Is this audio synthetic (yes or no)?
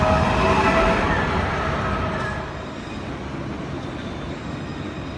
no